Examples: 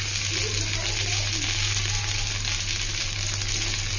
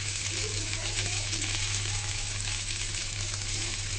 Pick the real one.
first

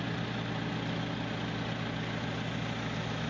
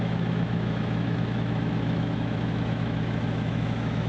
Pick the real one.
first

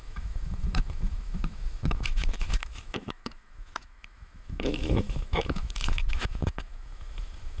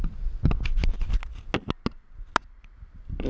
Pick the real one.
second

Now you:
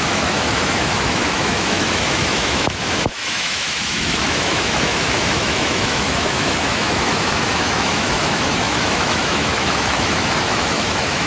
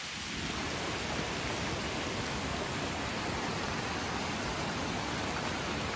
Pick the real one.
second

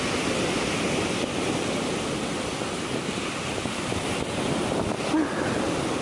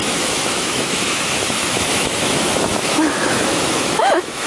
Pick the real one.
first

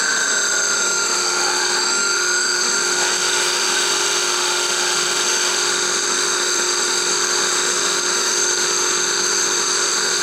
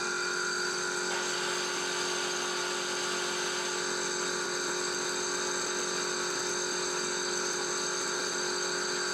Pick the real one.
second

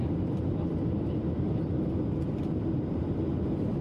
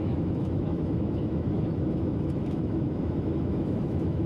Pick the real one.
first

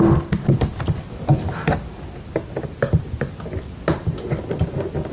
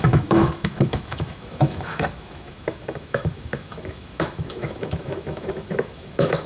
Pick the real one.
first